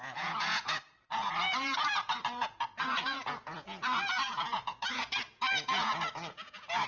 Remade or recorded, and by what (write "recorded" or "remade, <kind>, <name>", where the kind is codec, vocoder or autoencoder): remade, vocoder, Vocos